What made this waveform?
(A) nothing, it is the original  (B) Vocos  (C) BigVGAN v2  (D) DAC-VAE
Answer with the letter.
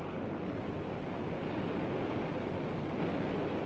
A